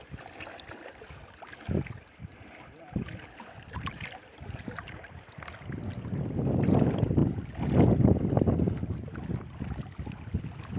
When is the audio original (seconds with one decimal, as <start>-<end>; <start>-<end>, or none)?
0.0-2.3; 5.3-10.8